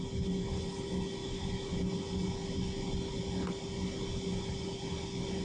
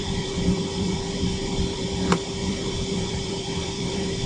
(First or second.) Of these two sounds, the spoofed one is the second